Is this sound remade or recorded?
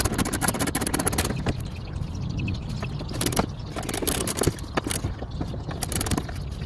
recorded